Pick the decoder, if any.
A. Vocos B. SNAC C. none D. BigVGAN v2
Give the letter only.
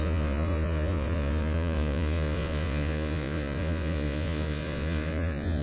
A